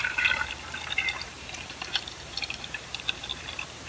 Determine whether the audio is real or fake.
fake